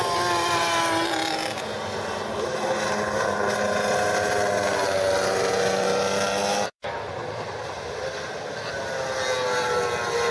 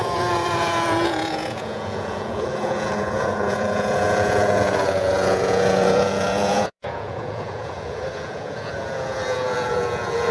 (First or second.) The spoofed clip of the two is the second